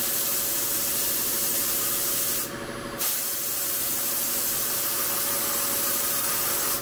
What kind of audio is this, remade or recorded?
recorded